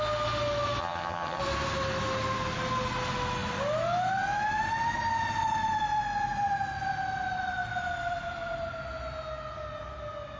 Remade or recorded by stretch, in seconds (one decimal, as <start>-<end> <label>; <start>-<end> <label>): 0.0-0.8 recorded; 0.8-1.4 remade; 1.4-10.4 recorded